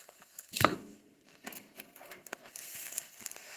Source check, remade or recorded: remade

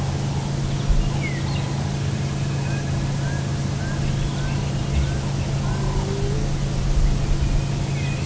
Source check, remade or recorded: recorded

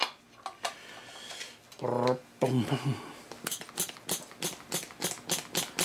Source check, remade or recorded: recorded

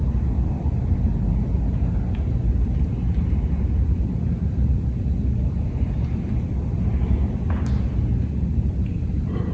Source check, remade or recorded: recorded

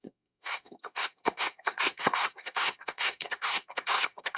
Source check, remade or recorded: remade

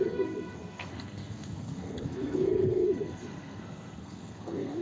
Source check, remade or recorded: remade